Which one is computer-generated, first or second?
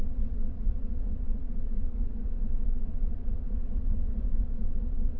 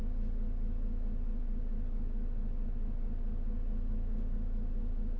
first